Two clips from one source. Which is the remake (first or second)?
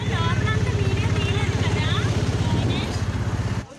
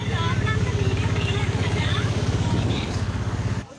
second